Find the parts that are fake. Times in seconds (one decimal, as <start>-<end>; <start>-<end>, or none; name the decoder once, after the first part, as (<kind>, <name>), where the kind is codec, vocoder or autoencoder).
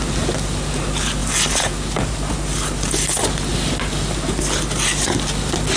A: none